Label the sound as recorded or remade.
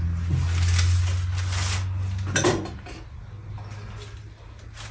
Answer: recorded